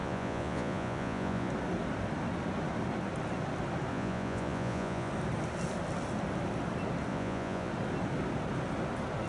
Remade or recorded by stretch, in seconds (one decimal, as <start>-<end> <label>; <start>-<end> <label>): 0.0-1.5 remade; 1.5-3.9 recorded; 3.9-5.1 remade; 5.1-7.1 recorded; 7.1-7.7 remade; 7.7-9.3 recorded